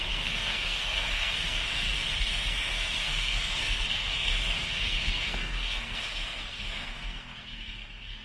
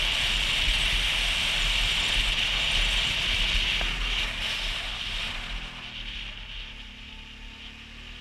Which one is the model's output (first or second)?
first